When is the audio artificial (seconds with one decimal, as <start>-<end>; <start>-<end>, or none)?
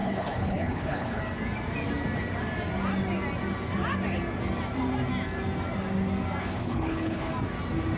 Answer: 0.0-1.2; 6.4-7.3